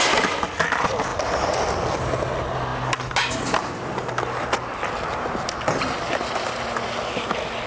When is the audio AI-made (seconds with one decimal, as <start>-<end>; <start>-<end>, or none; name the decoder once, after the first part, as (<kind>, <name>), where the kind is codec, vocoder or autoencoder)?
none